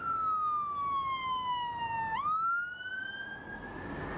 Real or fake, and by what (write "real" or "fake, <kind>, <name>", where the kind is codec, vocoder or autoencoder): real